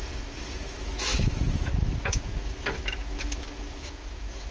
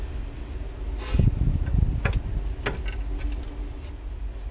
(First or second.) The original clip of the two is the second